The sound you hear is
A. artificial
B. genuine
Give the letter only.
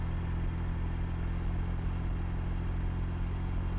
B